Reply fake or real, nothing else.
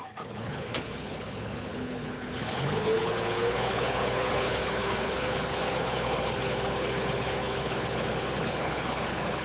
fake